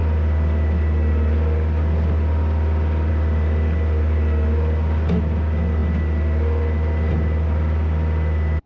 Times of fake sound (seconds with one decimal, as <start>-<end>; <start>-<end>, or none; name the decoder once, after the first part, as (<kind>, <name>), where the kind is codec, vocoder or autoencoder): none

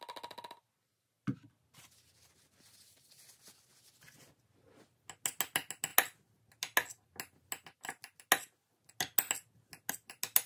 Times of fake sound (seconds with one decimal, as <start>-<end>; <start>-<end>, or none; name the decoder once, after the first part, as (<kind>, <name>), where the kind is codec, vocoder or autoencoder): none

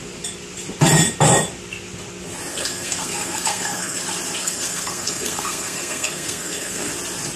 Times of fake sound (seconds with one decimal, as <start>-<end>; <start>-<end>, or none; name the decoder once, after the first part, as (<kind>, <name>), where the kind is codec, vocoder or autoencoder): 2.5-4.0 (codec, SNAC); 4.4-6.9

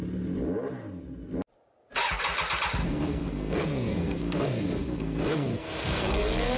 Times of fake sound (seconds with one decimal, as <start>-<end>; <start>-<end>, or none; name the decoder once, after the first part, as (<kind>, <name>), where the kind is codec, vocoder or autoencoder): 2.8-6.6 (codec, SNAC)

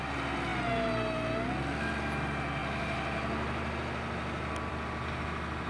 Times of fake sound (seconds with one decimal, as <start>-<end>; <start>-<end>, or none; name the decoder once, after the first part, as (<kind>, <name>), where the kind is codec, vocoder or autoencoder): none

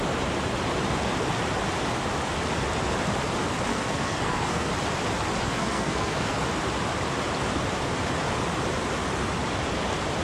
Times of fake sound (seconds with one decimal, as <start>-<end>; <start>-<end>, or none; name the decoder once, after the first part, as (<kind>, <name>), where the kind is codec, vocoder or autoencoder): 3.7-4.7 (codec, SNAC); 5.4-6.4

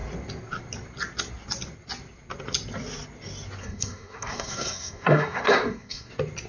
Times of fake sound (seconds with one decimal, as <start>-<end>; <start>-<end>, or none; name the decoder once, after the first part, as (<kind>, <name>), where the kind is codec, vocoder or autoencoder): 3.6-6.1 (codec, SNAC)